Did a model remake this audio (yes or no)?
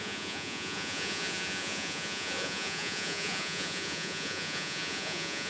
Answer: yes